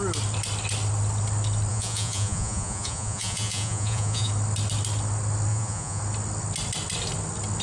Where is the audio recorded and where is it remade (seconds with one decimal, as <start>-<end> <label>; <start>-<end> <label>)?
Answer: 0.0-1.7 recorded; 1.7-4.3 remade; 4.3-5.5 recorded; 5.5-6.0 remade; 6.0-7.6 recorded